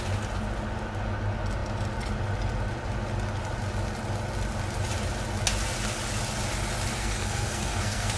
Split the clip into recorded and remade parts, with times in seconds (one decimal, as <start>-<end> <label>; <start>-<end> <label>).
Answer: 0.0-6.9 recorded; 6.9-8.2 remade